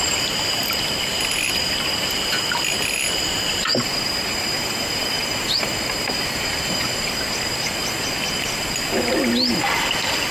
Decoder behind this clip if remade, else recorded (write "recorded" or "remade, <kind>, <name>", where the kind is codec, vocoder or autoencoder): recorded